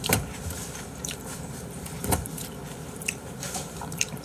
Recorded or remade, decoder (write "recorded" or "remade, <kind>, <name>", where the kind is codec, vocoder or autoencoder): remade, vocoder, BigVGAN v2